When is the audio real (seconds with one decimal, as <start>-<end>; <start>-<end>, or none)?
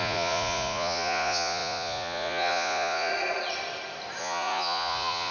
3.1-4.2